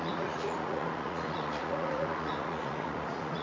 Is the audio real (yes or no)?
no